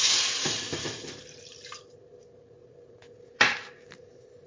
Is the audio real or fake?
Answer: fake